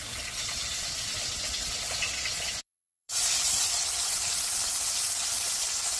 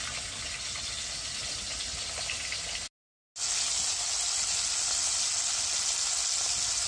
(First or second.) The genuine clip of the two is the second